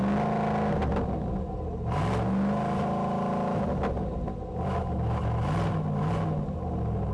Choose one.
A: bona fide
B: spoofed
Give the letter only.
A